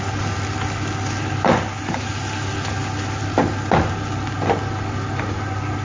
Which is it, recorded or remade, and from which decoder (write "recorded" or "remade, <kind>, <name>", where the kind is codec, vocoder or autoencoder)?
recorded